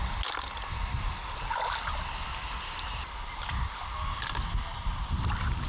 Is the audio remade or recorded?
recorded